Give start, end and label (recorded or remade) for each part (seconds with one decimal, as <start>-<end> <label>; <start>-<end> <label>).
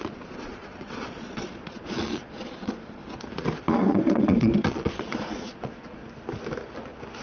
0.0-3.0 remade; 3.0-3.6 recorded; 3.6-6.0 remade; 6.0-7.2 recorded